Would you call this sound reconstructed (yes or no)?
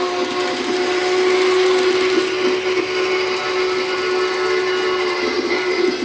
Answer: no